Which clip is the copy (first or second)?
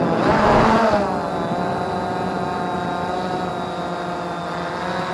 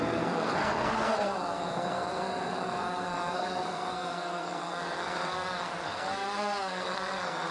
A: second